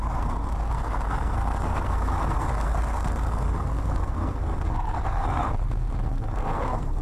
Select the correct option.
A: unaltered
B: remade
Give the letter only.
B